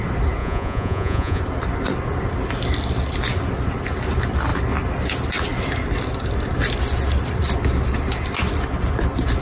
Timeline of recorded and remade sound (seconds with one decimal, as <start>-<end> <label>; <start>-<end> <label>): 0.0-0.4 recorded; 0.4-1.4 remade; 1.4-9.4 recorded